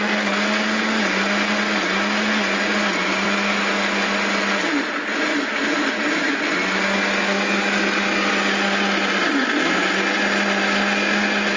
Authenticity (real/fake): real